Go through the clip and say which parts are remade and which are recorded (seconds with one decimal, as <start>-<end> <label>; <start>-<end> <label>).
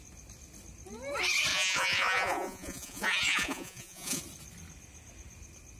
0.0-1.5 recorded; 1.5-4.2 remade; 4.2-5.8 recorded